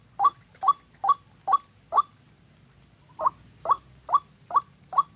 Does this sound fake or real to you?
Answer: real